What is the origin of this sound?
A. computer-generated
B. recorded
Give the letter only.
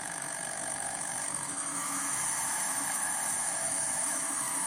A